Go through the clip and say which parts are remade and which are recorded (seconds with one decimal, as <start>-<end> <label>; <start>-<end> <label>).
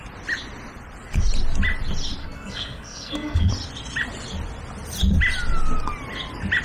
0.0-2.2 recorded; 2.2-3.5 remade; 3.5-6.6 recorded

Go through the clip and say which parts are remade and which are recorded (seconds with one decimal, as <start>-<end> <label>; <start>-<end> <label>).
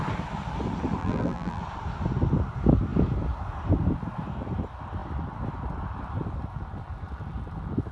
0.0-1.0 recorded; 1.0-1.6 remade; 1.6-7.9 recorded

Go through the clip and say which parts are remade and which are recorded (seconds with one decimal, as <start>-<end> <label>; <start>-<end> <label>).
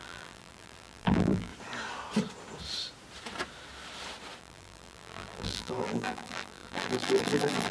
0.0-1.5 remade; 1.5-4.4 recorded; 4.4-7.7 remade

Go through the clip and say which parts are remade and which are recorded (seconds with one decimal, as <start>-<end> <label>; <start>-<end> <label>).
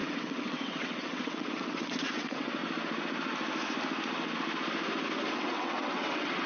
0.0-2.6 remade; 2.6-5.3 recorded; 5.3-6.5 remade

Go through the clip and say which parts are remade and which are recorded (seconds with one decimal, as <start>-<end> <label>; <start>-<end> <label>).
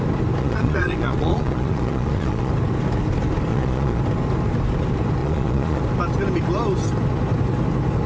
0.0-0.4 recorded; 0.4-2.5 remade; 2.5-3.5 recorded; 3.5-4.0 remade; 4.0-5.2 recorded; 5.2-5.8 remade; 5.8-8.1 recorded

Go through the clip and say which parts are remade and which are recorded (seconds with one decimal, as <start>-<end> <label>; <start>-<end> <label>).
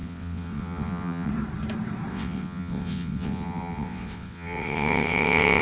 0.0-1.3 remade; 1.3-2.1 recorded; 2.1-5.6 remade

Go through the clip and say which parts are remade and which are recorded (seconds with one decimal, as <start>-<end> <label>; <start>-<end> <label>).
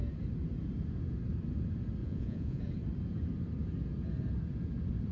0.0-2.0 recorded; 2.0-2.6 remade; 2.6-5.1 recorded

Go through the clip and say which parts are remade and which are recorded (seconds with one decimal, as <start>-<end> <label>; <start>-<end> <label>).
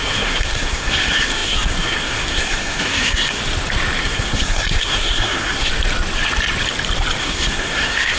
0.0-3.4 remade; 3.4-4.0 recorded; 4.0-5.7 remade; 5.7-7.2 recorded; 7.2-8.2 remade